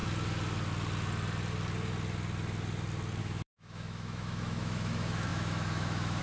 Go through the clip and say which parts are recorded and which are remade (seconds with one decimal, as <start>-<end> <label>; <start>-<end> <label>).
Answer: 0.0-3.2 recorded; 3.2-6.2 remade